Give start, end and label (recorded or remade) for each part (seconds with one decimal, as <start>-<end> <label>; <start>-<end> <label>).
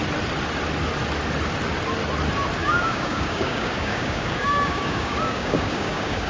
0.0-2.6 recorded; 2.6-6.3 remade